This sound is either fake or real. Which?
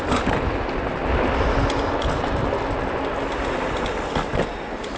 real